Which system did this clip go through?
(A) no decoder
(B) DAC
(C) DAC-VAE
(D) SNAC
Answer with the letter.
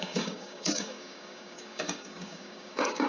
B